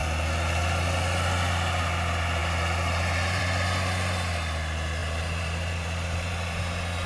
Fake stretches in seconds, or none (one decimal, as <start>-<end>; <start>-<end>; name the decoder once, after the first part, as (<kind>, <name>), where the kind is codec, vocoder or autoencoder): 2.4-3.4 (vocoder, BigVGAN v2); 5.0-6.6